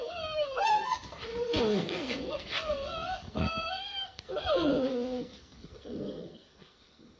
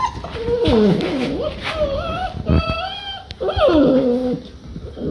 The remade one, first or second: first